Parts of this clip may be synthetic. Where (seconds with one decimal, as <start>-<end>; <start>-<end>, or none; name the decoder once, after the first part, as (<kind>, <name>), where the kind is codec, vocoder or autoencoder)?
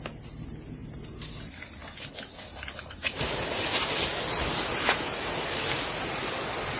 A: none